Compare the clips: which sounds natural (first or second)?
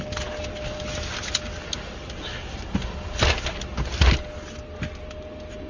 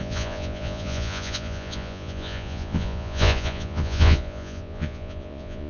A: first